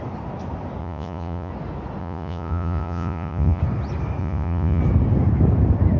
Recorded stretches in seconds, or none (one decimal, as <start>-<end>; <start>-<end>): 0.0-0.8; 1.5-2.0; 3.6-4.2; 4.8-6.0